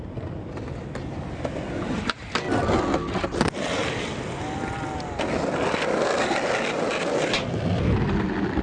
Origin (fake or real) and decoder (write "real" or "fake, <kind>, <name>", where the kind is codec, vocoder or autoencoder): real